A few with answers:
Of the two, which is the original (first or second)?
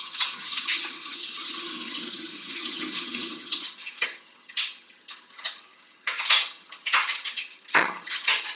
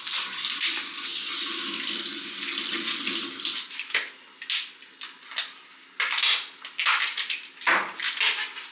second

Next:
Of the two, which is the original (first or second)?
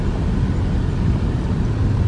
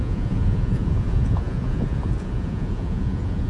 first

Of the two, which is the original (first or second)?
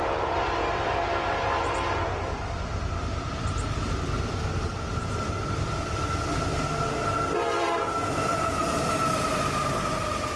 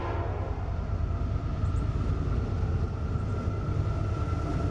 second